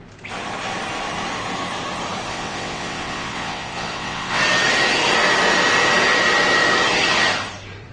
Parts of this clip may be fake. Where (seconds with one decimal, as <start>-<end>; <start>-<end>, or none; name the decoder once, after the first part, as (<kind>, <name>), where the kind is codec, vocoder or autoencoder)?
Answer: 2.3-4.4 (vocoder, WaveNeXt)